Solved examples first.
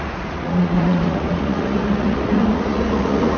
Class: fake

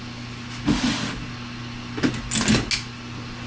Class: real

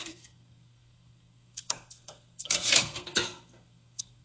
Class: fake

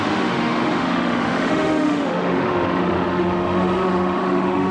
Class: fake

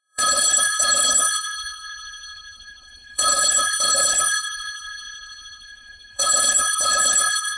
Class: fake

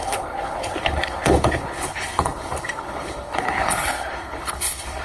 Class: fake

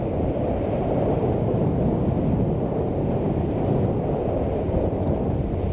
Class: real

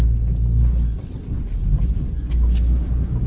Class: real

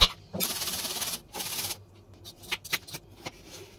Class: real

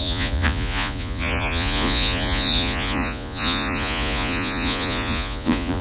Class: fake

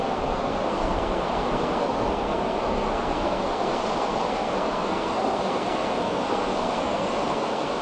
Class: fake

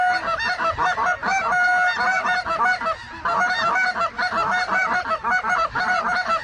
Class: real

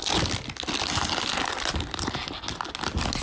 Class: real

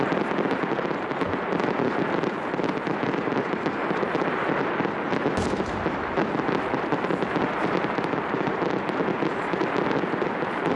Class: real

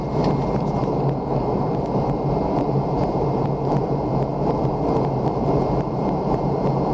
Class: fake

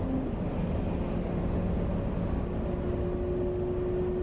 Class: real